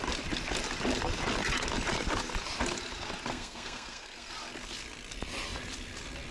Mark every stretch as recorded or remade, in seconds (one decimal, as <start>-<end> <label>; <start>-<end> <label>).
0.0-3.3 recorded; 3.3-4.3 remade; 4.3-6.3 recorded